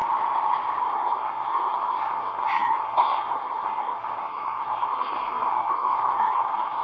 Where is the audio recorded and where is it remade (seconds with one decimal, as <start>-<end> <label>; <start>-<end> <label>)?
0.0-0.8 recorded; 0.8-6.8 remade